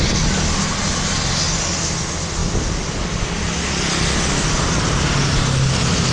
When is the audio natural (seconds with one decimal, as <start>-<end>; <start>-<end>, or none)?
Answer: 0.0-6.1